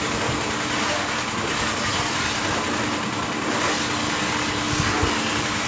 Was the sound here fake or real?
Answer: real